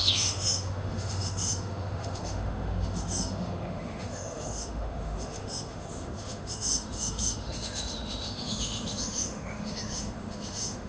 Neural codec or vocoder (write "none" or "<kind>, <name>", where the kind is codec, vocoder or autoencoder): autoencoder, DAC-VAE